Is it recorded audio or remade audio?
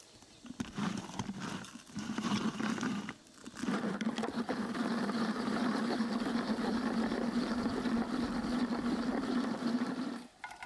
remade